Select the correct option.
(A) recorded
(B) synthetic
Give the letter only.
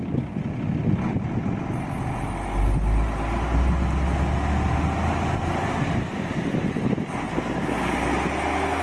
A